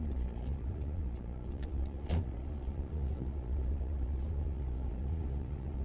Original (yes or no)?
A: no